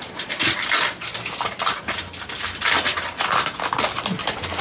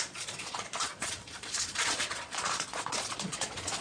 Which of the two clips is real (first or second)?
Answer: first